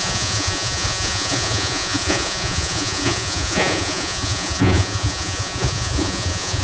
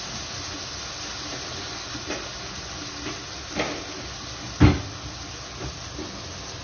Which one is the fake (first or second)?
first